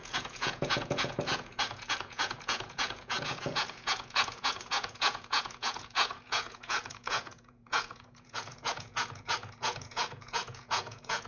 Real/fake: fake